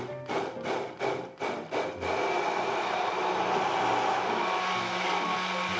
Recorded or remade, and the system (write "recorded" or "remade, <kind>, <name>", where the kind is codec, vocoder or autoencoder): recorded